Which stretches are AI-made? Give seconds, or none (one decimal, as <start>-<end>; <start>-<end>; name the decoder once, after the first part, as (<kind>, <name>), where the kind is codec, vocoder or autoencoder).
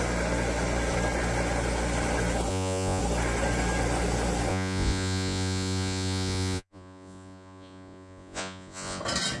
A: 2.5-3.0 (vocoder, Vocos); 4.5-9.0